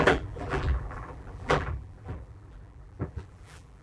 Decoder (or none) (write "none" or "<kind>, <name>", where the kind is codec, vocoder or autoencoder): vocoder, BigVGAN v2